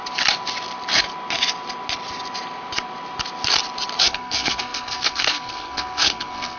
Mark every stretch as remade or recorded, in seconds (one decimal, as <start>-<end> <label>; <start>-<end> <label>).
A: 0.0-4.0 recorded; 4.0-6.6 remade